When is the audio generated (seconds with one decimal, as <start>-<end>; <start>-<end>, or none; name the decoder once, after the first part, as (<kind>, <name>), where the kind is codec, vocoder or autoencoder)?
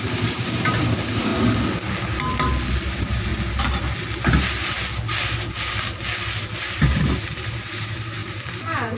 0.0-1.3 (vocoder, BigVGAN v2); 2.8-3.3; 6.4-9.0